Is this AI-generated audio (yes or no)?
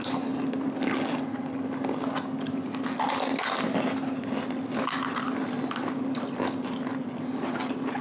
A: no